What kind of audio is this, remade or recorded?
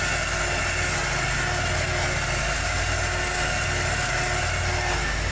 recorded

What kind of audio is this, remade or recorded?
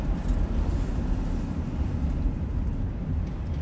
recorded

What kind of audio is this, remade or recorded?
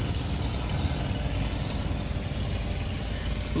recorded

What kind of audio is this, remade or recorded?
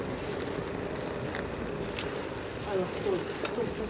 recorded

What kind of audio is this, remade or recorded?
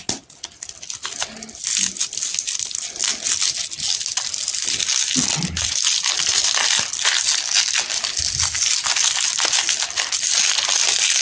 recorded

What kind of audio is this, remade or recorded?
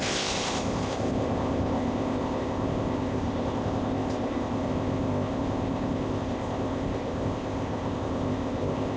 remade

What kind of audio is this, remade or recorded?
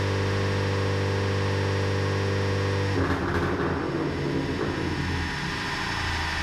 recorded